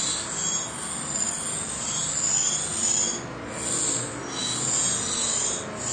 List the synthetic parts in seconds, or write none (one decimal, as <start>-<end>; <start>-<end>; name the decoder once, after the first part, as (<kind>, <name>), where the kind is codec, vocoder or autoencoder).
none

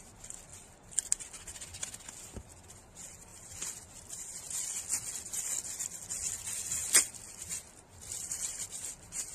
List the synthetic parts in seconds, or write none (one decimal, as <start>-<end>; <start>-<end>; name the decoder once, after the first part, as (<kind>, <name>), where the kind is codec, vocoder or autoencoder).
none

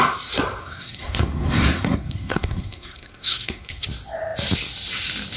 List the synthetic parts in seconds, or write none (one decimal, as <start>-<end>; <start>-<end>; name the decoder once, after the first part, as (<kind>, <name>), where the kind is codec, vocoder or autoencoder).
0.6-3.8 (codec, SNAC)

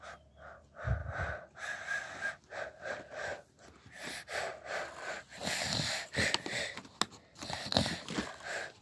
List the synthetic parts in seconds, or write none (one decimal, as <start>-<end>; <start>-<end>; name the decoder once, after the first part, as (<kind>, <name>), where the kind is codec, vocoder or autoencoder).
none

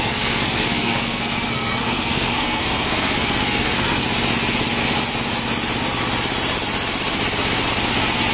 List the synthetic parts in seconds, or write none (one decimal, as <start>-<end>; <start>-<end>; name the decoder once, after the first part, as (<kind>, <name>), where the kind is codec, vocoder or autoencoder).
0.0-4.0 (codec, SNAC)

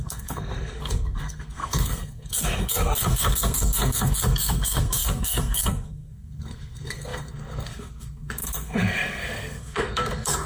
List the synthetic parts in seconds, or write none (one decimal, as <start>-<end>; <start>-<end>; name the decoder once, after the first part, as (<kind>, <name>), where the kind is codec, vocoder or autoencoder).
0.0-10.5 (codec, SNAC)